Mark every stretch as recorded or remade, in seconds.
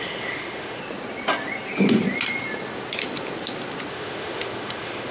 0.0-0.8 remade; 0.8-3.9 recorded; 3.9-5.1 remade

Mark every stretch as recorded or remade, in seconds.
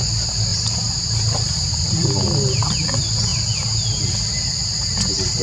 0.0-5.4 recorded